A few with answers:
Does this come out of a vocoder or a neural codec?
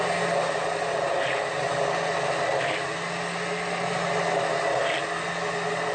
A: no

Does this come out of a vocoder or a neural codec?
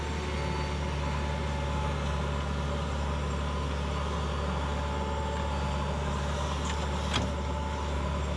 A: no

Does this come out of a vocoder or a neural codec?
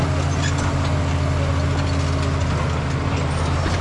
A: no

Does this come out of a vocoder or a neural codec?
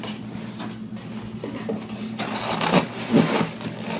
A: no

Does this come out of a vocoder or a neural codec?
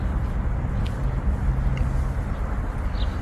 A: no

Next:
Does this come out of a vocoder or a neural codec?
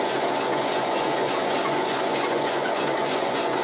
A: yes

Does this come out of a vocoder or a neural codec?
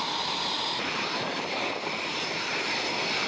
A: no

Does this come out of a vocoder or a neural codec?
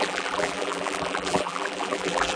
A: yes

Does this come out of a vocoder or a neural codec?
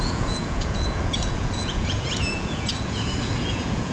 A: yes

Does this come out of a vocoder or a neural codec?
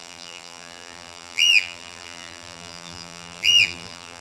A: yes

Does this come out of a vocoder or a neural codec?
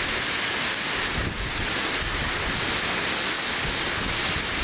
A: no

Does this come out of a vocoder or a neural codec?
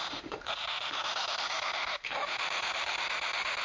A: yes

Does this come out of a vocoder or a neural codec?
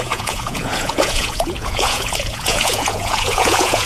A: yes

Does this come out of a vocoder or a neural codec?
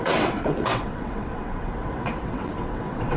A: yes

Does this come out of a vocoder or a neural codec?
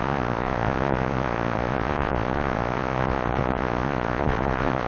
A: yes